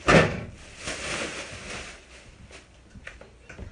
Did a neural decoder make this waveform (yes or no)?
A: no